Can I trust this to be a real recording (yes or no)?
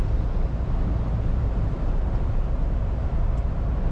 yes